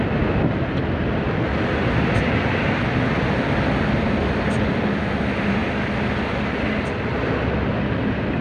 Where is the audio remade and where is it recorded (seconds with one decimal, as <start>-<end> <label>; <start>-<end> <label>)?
0.0-8.4 recorded